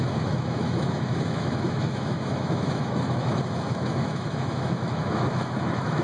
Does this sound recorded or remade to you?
remade